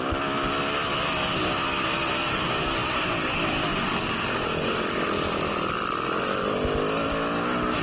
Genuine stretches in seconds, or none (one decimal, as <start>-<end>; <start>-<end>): 0.0-7.8